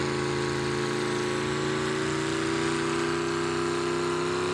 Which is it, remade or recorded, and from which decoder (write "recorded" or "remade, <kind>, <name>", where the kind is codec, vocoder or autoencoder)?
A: recorded